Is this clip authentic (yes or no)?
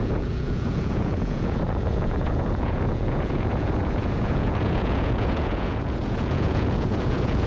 no